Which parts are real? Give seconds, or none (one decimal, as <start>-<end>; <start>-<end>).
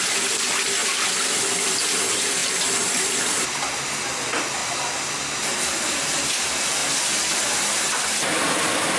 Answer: 0.0-2.4; 3.2-9.0